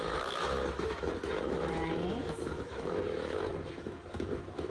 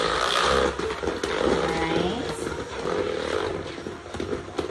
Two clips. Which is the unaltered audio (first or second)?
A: second